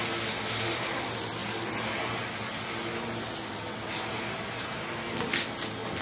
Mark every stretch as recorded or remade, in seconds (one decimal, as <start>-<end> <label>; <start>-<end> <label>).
0.0-6.0 recorded